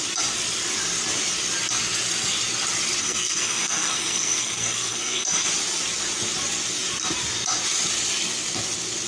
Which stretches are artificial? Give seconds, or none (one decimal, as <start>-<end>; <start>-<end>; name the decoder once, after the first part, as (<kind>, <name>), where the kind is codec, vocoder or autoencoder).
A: 3.0-5.5 (codec, SNAC)